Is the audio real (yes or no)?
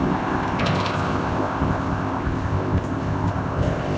no